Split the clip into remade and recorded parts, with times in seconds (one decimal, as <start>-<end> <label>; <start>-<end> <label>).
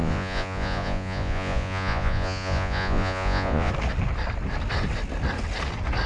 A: 0.0-3.7 remade; 3.7-6.1 recorded